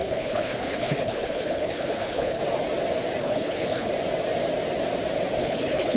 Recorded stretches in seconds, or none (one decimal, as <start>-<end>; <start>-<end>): 2.4-3.2; 3.9-5.4